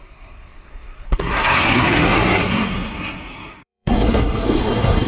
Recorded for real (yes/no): no